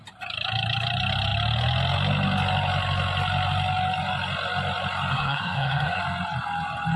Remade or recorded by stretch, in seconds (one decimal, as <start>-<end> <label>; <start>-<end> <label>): 0.0-5.1 recorded; 5.1-6.0 remade; 6.0-7.0 recorded